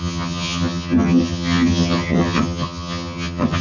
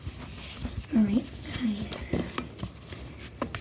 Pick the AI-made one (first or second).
first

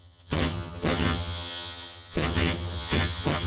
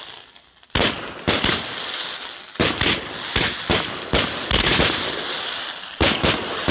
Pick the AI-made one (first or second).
first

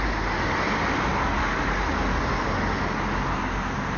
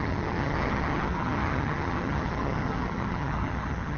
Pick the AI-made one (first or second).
second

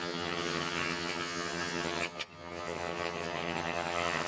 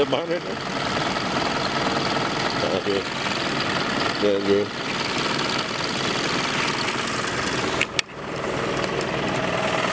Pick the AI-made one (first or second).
first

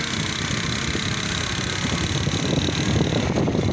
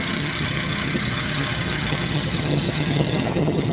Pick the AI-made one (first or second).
second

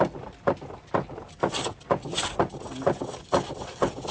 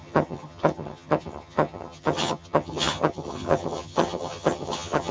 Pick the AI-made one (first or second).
second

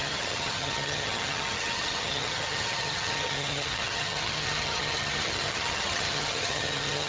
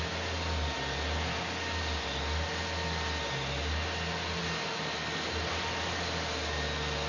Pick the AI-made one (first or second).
first